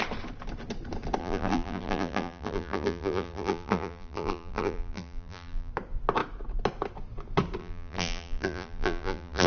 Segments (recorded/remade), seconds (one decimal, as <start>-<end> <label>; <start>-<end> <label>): 0.0-1.2 recorded; 1.2-5.7 remade; 5.7-7.6 recorded; 7.6-9.5 remade